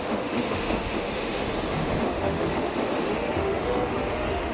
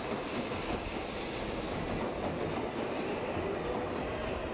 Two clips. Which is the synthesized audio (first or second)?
first